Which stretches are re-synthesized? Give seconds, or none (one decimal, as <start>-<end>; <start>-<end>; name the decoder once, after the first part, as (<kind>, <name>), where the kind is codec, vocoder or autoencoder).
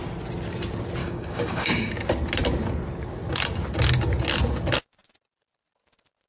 1.0-1.9 (codec, DAC)